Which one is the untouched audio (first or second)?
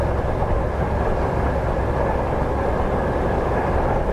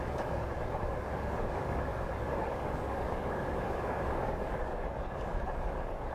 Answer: first